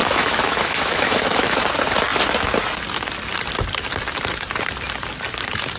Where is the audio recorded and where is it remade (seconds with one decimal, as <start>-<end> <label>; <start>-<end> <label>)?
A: 0.0-1.6 remade; 1.6-5.8 recorded